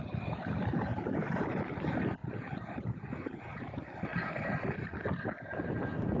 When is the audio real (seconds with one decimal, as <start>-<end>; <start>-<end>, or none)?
0.0-0.9; 1.6-2.2; 3.4-6.2